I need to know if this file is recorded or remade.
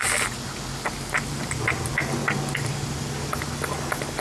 recorded